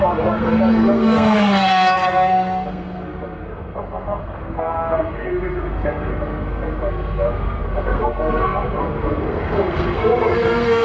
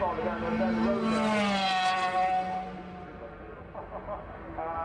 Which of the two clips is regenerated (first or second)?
first